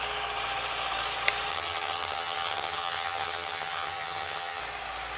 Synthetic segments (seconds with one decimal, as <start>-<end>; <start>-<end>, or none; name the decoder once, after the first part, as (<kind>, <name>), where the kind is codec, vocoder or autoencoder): 1.5-4.6 (vocoder, HiFi-GAN)